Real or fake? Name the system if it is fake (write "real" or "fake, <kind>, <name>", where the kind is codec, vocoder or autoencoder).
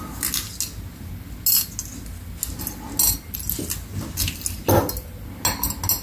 real